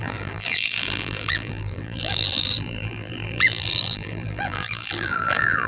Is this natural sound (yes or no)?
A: no